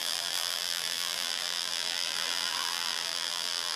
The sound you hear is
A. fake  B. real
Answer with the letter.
A